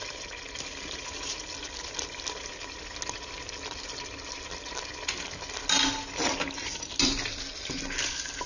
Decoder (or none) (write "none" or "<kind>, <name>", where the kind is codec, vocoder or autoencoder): none